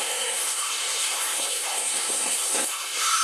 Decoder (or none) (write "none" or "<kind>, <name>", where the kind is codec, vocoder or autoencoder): codec, SNAC